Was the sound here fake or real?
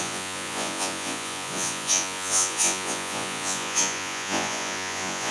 fake